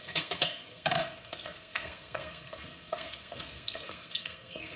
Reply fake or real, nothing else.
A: fake